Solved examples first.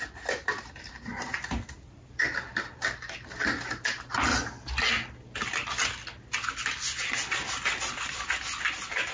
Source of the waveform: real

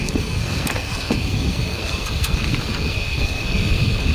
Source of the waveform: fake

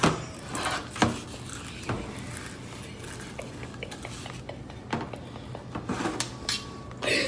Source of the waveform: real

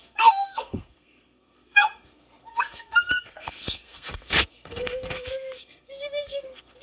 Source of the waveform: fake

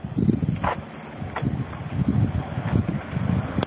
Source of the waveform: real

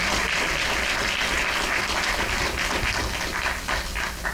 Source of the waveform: real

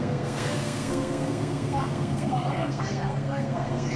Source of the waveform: fake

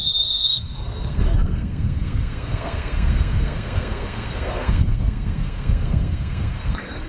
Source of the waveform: fake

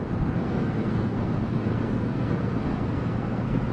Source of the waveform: fake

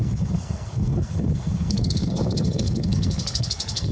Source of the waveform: fake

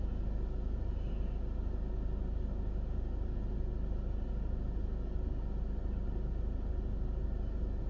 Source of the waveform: real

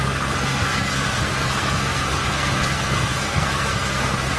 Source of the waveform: fake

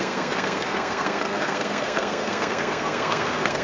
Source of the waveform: fake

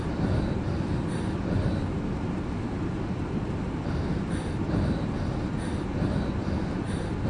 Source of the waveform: real